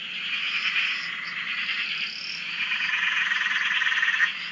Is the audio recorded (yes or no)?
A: yes